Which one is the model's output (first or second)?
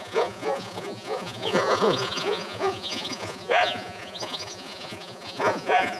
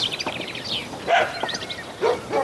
first